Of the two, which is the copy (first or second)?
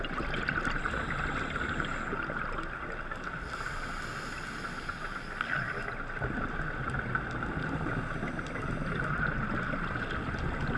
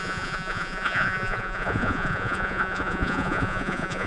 second